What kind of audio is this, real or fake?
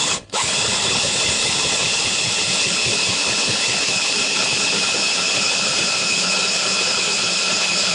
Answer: fake